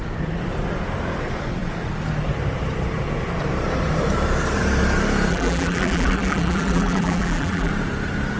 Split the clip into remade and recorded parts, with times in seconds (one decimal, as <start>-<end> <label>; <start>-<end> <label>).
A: 0.0-5.3 recorded; 5.3-7.7 remade; 7.7-8.4 recorded